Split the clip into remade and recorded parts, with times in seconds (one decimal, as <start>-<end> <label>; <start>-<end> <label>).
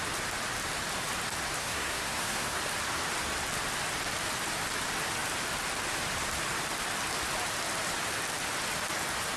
0.0-1.6 recorded; 1.6-2.6 remade; 2.6-9.4 recorded